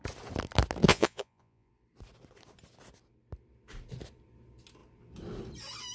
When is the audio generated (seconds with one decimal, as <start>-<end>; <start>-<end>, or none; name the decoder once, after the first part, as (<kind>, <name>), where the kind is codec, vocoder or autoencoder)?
0.9-1.7 (vocoder, Vocos)